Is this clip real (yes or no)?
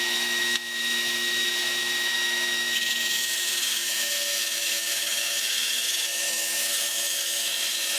no